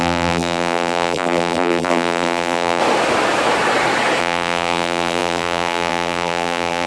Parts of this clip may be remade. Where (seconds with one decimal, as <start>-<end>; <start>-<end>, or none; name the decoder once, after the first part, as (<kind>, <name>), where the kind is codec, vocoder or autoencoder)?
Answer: 0.0-2.8 (vocoder, BigVGAN v2); 4.2-6.9

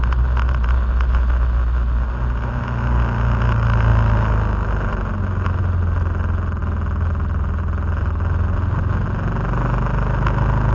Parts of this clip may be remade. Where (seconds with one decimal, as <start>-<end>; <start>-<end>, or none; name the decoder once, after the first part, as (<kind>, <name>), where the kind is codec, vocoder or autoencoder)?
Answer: none

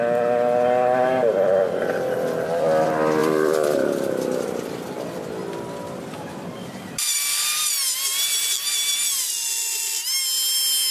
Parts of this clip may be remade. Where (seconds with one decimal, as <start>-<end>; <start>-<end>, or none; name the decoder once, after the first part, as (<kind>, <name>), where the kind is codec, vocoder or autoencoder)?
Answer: 3.2-7.6 (vocoder, BigVGAN v2)

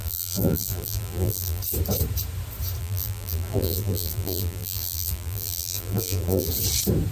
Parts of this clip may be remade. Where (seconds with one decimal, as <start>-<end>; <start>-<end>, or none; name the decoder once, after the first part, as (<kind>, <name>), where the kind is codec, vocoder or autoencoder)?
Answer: 0.0-1.6 (vocoder, BigVGAN v2); 2.8-6.5

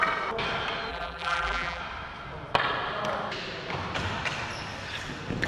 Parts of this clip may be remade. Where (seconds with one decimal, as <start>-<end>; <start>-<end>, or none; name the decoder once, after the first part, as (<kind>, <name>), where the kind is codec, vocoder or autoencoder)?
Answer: 0.9-1.8 (vocoder, BigVGAN v2)

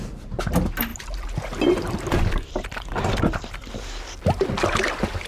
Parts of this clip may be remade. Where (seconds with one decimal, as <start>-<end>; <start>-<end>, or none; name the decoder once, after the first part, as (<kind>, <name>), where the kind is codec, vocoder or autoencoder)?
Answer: 0.9-3.7 (vocoder, BigVGAN v2)

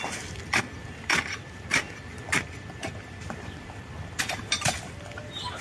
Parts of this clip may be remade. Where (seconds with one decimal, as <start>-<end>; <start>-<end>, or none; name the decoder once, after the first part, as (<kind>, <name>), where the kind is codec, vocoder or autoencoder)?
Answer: 0.0-5.6 (vocoder, BigVGAN v2)